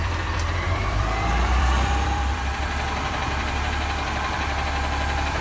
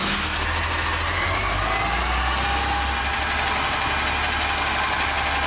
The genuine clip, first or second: second